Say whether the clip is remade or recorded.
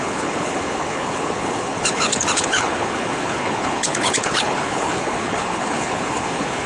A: remade